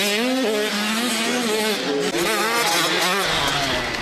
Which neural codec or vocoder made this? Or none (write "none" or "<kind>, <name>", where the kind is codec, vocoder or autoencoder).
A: none